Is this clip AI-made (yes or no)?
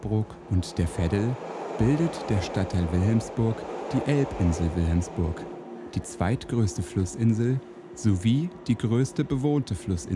no